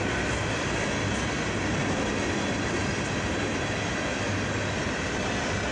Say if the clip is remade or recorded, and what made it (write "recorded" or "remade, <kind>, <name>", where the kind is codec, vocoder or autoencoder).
recorded